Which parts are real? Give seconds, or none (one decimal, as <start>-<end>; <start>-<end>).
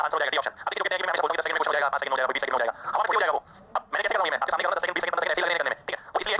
0.0-0.6; 4.0-6.4